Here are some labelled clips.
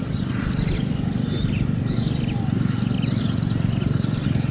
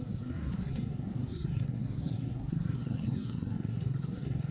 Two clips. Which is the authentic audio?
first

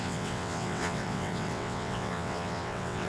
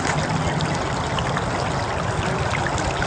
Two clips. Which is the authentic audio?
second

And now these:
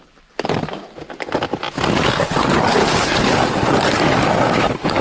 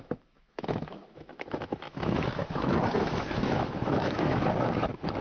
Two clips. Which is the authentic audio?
first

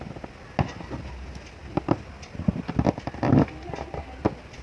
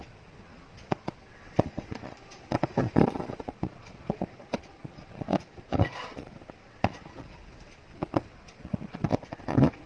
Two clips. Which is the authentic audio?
first